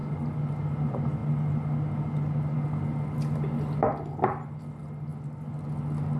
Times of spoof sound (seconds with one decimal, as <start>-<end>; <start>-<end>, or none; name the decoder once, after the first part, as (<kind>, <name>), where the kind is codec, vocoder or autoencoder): none